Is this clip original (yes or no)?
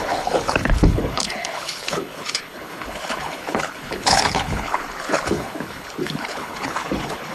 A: no